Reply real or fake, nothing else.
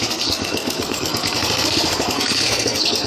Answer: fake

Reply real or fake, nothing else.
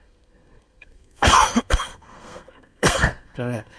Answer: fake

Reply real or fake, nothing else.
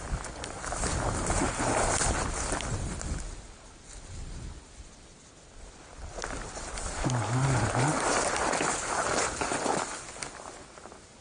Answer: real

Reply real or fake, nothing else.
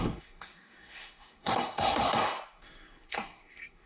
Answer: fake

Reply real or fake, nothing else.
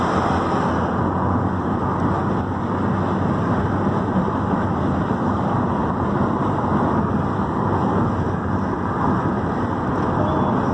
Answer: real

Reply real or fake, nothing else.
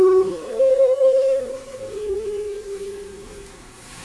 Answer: fake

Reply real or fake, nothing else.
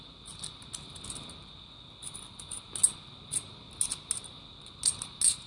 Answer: real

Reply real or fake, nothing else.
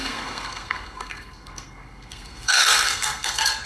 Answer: fake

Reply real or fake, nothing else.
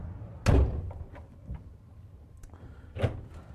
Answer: real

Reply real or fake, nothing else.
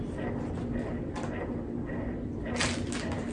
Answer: real